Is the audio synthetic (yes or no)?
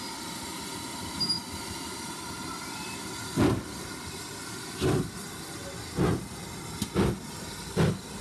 no